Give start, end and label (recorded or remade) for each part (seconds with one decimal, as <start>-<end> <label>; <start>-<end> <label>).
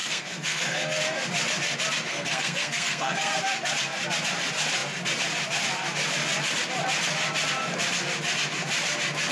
0.0-1.0 remade; 1.0-2.1 recorded; 2.1-3.4 remade; 3.4-9.3 recorded